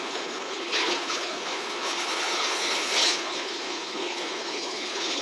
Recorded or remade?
remade